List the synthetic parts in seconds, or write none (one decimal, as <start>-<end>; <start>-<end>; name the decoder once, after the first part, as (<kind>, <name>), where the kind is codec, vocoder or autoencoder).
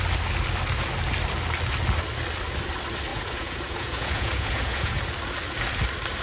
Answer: 3.1-5.0 (vocoder, Vocos)